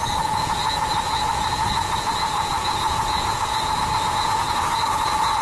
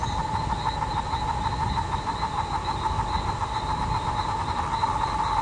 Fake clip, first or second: first